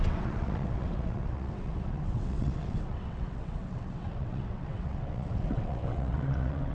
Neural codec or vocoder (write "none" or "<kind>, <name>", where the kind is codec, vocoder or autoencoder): vocoder, WaveNeXt